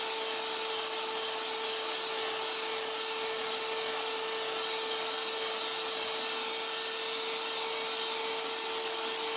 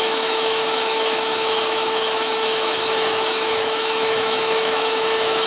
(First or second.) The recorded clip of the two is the first